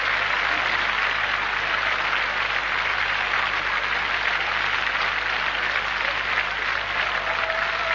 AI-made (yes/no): no